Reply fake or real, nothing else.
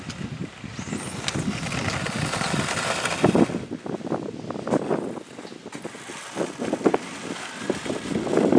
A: real